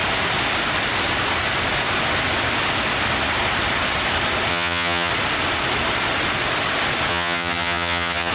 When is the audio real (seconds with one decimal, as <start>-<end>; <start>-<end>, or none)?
0.0-4.5; 5.1-7.1